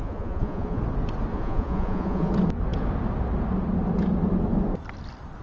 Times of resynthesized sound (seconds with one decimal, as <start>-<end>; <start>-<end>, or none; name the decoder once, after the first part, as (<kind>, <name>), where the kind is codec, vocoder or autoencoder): 0.0-0.8 (vocoder, Vocos); 1.3-2.3